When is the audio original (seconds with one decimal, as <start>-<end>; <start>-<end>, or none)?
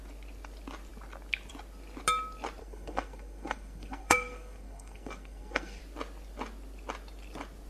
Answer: 0.0-2.6; 5.8-7.7